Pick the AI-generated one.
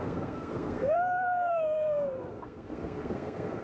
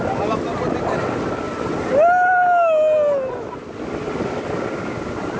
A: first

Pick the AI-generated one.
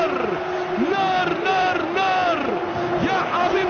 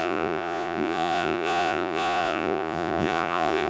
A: second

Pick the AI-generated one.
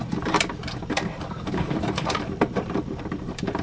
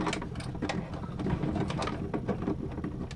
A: first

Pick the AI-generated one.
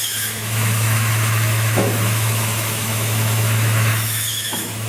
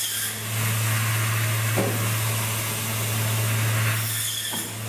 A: first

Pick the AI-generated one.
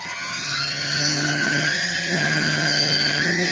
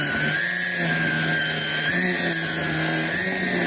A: first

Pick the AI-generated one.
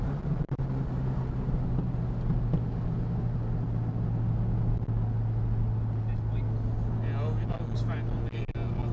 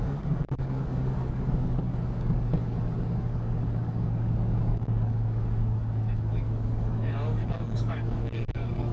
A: second